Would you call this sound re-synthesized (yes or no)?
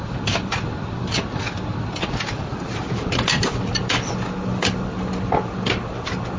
no